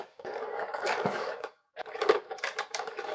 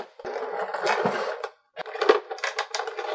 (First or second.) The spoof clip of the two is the first